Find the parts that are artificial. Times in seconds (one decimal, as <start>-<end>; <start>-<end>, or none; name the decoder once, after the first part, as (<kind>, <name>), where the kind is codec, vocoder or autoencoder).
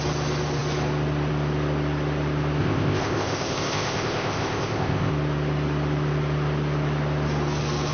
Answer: 2.6-5.1 (codec, ZipCodec)